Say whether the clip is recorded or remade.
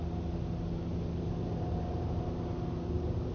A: recorded